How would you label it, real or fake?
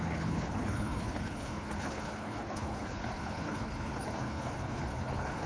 fake